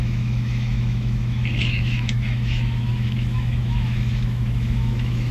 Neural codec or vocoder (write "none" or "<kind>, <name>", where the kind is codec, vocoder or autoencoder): autoencoder, DAC-VAE